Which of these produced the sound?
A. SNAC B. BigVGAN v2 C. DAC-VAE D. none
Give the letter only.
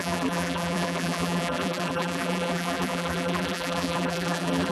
B